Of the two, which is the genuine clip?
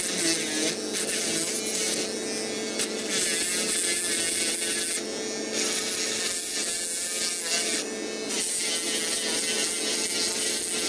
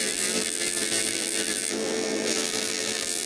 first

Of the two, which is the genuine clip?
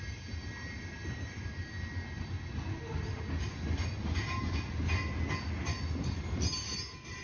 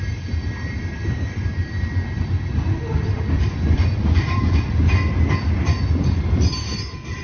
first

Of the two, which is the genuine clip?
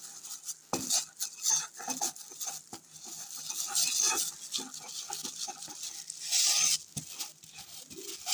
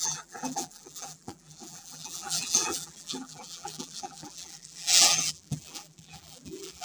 first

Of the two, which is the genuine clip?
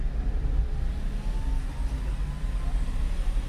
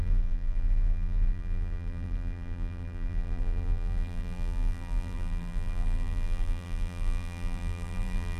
first